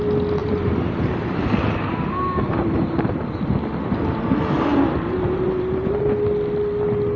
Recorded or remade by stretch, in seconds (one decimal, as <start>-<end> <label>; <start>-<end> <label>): 0.0-0.4 recorded; 0.4-1.4 remade; 1.4-2.5 recorded; 2.5-3.2 remade; 3.2-4.7 recorded; 4.7-6.0 remade; 6.0-7.2 recorded